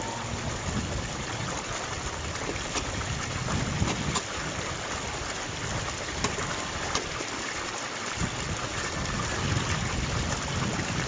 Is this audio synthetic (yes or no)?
no